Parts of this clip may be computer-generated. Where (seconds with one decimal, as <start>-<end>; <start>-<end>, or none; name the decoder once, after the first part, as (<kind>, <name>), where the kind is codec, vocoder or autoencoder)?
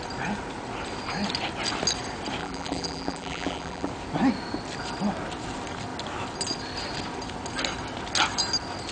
2.4-3.9 (vocoder, BigVGAN v2)